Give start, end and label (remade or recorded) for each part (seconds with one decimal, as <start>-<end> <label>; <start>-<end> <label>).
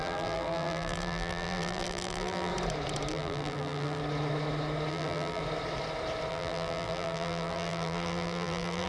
0.0-2.5 remade; 2.5-3.1 recorded; 3.1-4.0 remade; 4.0-4.9 recorded; 4.9-5.4 remade; 5.4-6.3 recorded; 6.3-8.9 remade